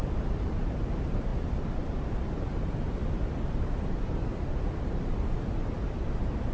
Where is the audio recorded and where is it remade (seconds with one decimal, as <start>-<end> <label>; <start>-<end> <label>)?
0.0-6.5 recorded

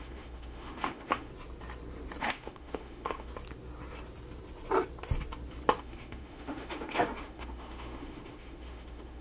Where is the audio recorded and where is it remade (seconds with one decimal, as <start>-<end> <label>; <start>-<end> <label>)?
0.0-1.3 remade; 1.3-2.2 recorded; 2.2-3.3 remade; 3.3-5.8 recorded; 5.8-9.2 remade

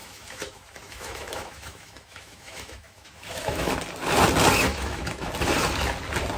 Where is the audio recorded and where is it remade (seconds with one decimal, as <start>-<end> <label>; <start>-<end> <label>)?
0.0-3.7 remade; 3.7-4.7 recorded; 4.7-5.3 remade; 5.3-6.4 recorded